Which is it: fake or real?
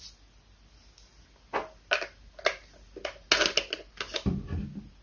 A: real